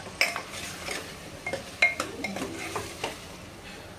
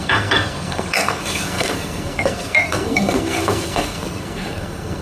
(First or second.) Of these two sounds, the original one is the first